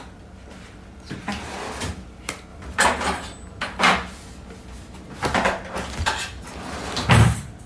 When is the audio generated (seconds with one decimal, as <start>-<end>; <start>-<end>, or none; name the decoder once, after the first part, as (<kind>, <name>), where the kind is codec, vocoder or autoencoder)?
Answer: none